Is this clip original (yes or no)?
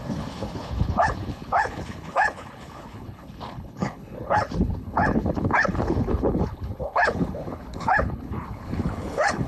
no